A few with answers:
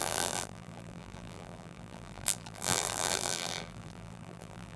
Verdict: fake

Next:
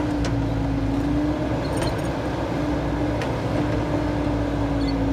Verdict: real